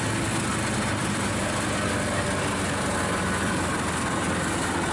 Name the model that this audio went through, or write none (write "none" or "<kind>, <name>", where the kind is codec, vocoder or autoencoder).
none